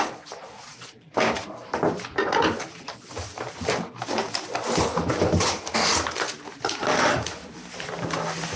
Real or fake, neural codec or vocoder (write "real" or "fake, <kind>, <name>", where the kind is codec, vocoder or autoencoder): real